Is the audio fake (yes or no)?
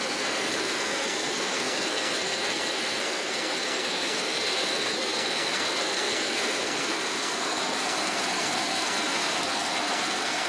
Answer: yes